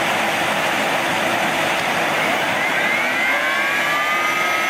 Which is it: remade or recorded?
recorded